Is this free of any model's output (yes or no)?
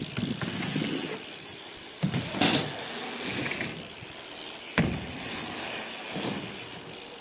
yes